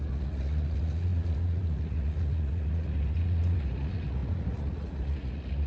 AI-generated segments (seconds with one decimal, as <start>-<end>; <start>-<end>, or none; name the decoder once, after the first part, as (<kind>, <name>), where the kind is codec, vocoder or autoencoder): 0.0-5.7 (vocoder, Vocos)